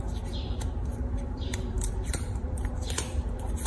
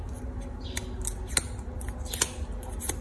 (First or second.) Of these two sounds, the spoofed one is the first